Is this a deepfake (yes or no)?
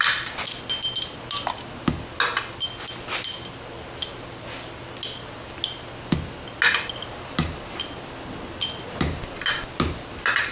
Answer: no